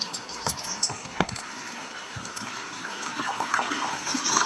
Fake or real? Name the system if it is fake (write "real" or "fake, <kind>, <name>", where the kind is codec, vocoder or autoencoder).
fake, codec, SNAC